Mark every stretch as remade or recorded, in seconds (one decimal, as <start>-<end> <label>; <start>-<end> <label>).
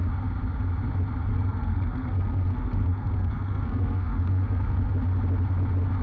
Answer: 0.0-1.3 recorded; 1.3-4.9 remade; 4.9-6.0 recorded